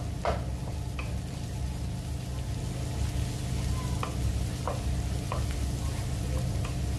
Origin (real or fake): real